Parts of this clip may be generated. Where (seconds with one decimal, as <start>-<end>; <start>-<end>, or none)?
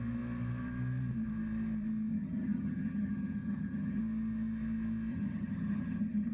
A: 2.1-4.0; 5.1-6.3